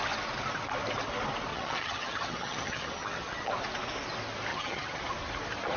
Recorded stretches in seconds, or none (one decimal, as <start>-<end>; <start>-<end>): 0.0-1.5; 3.5-4.5; 5.0-5.8